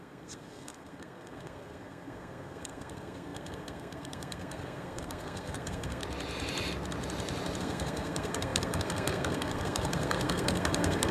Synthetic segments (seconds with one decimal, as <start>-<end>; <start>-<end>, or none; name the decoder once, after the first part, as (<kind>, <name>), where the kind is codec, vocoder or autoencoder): 0.0-6.0 (codec, SNAC); 7.6-11.1